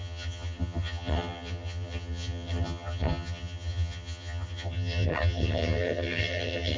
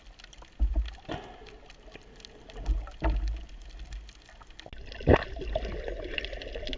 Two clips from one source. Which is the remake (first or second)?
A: first